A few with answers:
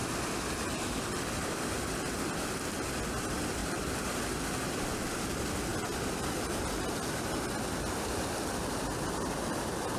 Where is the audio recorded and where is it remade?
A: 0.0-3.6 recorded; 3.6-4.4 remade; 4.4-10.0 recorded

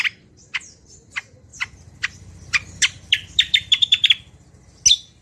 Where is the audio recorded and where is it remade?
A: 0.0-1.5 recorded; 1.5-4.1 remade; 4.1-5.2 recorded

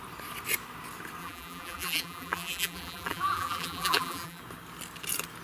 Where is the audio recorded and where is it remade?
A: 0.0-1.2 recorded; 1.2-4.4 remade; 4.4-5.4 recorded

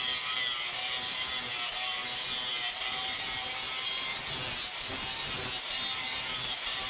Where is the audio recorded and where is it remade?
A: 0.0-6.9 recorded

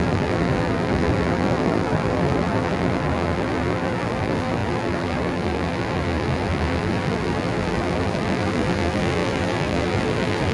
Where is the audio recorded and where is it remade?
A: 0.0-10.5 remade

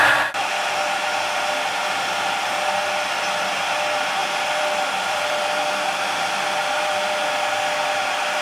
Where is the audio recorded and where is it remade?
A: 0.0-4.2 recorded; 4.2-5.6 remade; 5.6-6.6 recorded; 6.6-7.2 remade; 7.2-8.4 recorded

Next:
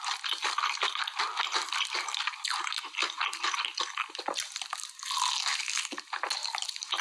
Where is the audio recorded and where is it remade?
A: 0.0-7.0 recorded

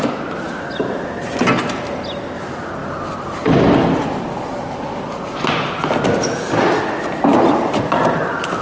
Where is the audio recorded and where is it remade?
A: 0.0-2.8 recorded; 2.8-5.1 remade; 5.1-7.3 recorded; 7.3-8.0 remade; 8.0-8.6 recorded